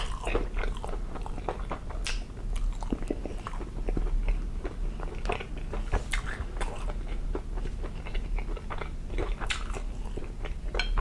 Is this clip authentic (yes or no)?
yes